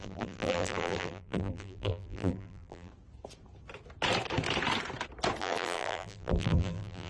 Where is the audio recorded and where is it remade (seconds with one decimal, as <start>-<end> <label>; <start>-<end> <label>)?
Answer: 0.0-2.9 remade; 2.9-5.4 recorded; 5.4-7.1 remade